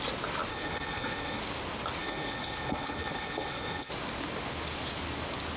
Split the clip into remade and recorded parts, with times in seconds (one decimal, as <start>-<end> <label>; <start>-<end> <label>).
0.0-0.5 recorded; 0.5-1.4 remade; 1.4-2.0 recorded; 2.0-3.9 remade; 3.9-5.6 recorded